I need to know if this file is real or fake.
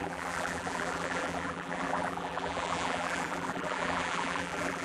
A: fake